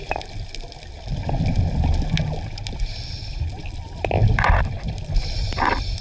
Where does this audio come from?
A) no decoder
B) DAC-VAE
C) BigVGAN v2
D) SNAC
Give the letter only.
C